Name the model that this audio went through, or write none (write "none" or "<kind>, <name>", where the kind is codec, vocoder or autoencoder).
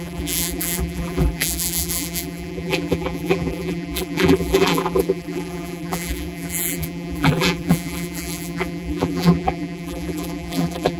vocoder, BigVGAN v2